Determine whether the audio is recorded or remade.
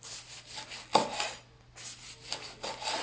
recorded